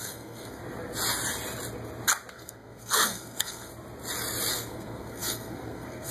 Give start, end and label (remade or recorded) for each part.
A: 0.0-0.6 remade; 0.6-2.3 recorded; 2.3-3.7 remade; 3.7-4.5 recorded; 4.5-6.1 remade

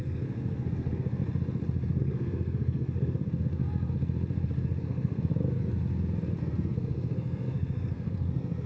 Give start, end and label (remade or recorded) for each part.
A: 0.0-1.2 remade; 1.2-2.0 recorded; 2.0-3.6 remade; 3.6-4.8 recorded; 4.8-5.3 remade; 5.3-6.4 recorded; 6.4-8.7 remade

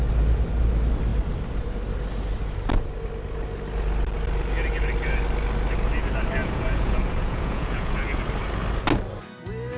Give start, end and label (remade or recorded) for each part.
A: 0.0-6.4 recorded; 6.4-8.2 remade; 8.2-9.8 recorded